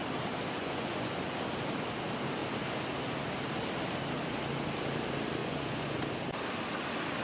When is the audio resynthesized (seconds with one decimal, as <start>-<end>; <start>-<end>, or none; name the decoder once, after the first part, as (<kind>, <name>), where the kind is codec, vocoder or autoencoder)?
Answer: 0.6-1.2 (vocoder, Vocos); 5.4-6.0

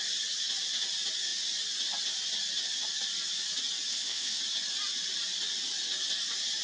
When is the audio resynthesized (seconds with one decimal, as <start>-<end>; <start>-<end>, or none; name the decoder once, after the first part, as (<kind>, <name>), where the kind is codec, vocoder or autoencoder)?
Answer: 3.9-4.4 (codec, ZipCodec)

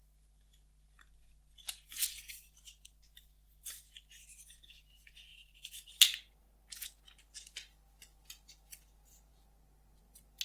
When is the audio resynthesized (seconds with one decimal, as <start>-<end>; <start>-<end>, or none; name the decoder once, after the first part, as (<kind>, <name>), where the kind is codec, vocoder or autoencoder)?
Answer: 5.3-5.9 (vocoder, BigVGAN v2)

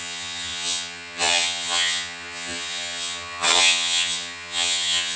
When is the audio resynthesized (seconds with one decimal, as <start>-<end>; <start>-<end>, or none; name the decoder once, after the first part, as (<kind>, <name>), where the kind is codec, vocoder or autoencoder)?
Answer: 0.0-5.2 (vocoder, HiFi-GAN)